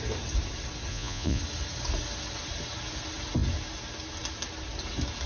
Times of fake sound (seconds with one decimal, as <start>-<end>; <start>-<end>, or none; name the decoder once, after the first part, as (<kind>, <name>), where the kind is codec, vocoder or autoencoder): 0.9-1.4 (vocoder, Vocos)